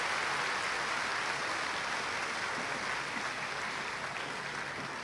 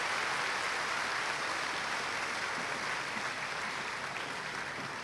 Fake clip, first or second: second